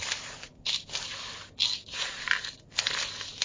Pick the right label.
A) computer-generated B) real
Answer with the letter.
B